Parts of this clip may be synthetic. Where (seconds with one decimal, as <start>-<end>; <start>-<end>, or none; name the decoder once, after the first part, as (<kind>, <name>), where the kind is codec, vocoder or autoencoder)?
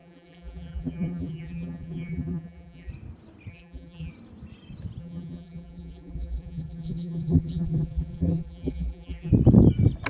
0.0-2.9 (vocoder, BigVGAN v2); 3.5-4.1; 5.0-9.3